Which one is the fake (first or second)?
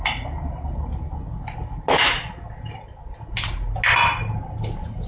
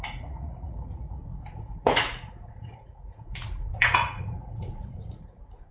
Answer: second